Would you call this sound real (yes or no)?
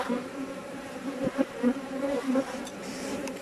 no